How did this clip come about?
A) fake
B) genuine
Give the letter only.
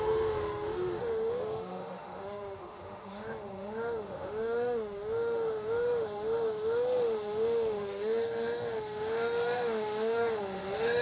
A